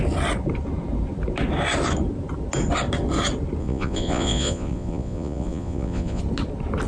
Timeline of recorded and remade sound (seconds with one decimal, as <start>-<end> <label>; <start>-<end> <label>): 0.0-3.6 recorded; 3.6-6.2 remade; 6.2-6.9 recorded